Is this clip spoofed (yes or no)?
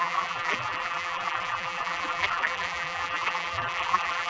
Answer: yes